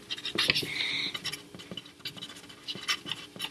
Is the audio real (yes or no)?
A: yes